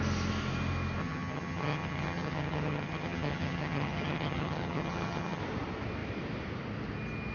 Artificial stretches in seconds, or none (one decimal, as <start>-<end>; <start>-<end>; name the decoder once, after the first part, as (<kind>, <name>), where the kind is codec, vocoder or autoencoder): 1.0-5.4 (vocoder, HiFi-GAN)